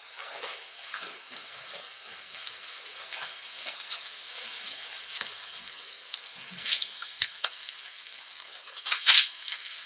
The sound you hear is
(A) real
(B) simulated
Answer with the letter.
B